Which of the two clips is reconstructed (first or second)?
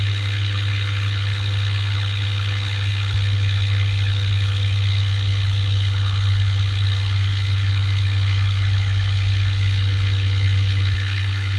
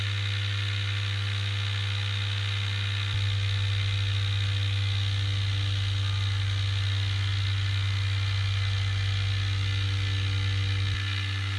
first